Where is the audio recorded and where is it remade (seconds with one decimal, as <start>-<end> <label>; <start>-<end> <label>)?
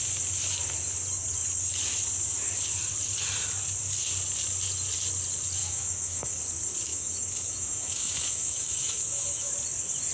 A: 0.0-5.6 recorded; 5.6-6.4 remade; 6.4-6.9 recorded; 6.9-9.5 remade; 9.5-10.1 recorded